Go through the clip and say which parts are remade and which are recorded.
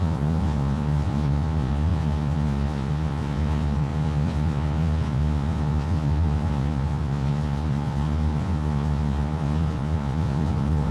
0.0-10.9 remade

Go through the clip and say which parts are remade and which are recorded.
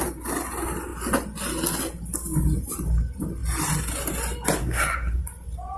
0.0-4.6 recorded; 4.6-5.2 remade; 5.2-5.8 recorded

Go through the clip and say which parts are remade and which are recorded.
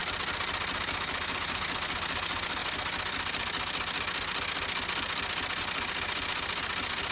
0.0-0.8 recorded; 0.8-2.6 remade; 2.6-5.6 recorded; 5.6-7.1 remade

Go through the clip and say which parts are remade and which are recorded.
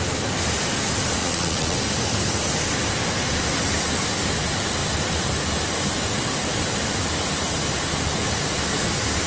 0.0-1.2 recorded; 1.2-1.8 remade; 1.8-9.3 recorded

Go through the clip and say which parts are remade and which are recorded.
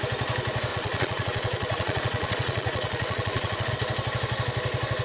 0.0-0.7 recorded; 0.7-3.7 remade; 3.7-5.0 recorded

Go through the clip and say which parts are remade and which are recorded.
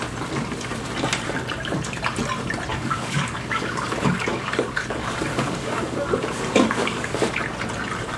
0.0-2.7 recorded; 2.7-7.4 remade; 7.4-8.2 recorded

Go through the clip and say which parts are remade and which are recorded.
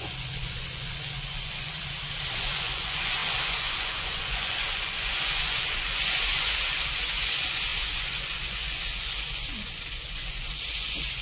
0.0-1.7 remade; 1.7-2.3 recorded; 2.3-11.2 remade